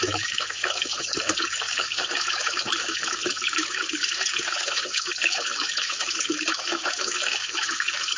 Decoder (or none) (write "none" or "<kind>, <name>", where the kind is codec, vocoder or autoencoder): autoencoder, DAC-VAE